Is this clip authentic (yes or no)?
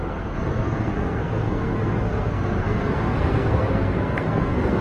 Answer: no